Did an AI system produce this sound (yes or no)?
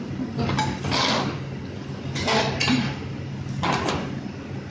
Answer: no